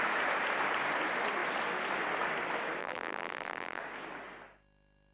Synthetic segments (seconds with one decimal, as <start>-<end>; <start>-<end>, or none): 2.8-3.8